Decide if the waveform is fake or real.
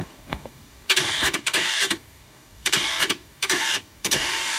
fake